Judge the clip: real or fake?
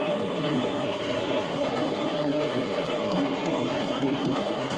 fake